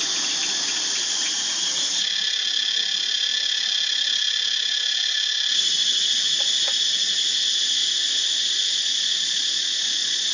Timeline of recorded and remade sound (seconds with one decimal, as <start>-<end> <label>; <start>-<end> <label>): 0.0-3.3 recorded; 3.3-6.8 remade; 6.8-7.8 recorded; 7.8-8.8 remade; 8.8-10.3 recorded